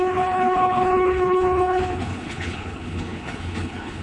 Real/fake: fake